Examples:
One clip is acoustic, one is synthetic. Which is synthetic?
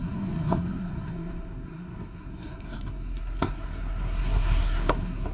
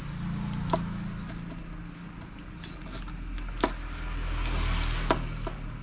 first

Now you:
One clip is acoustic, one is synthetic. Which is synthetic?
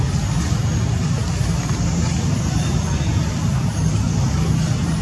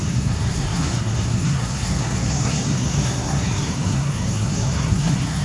second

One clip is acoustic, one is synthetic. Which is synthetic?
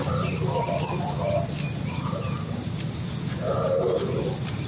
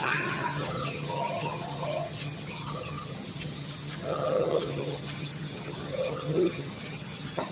second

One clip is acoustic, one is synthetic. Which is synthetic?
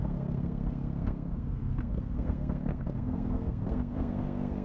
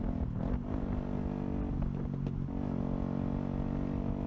first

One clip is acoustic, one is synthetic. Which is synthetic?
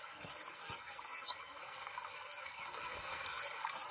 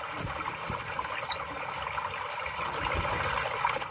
first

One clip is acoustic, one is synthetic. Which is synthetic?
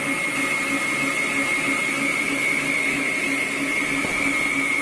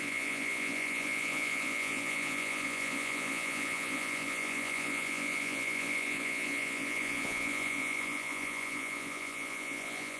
second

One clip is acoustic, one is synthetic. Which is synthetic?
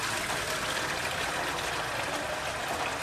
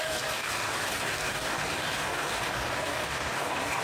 second